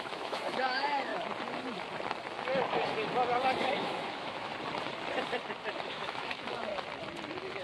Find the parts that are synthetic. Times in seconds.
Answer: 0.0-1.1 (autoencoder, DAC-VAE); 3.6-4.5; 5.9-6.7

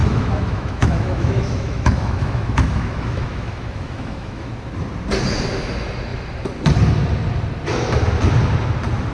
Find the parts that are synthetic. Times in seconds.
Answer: 0.0-4.5 (autoencoder, DAC-VAE)

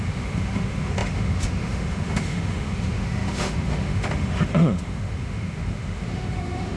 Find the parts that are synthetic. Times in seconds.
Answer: 0.0-6.8 (autoencoder, DAC-VAE)

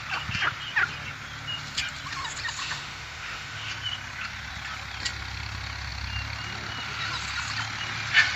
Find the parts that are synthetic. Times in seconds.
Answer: 2.6-3.7 (autoencoder, DAC-VAE)

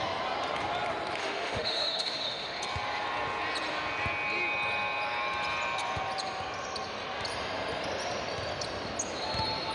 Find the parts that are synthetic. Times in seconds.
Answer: 1.2-2.6 (autoencoder, DAC-VAE)

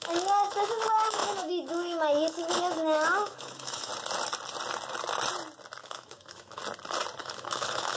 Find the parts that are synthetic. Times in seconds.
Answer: 0.0-3.9 (autoencoder, DAC-VAE); 5.8-6.6; 7.2-8.0